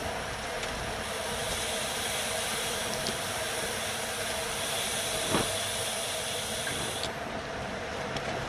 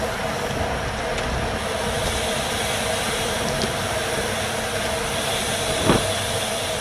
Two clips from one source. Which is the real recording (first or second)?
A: second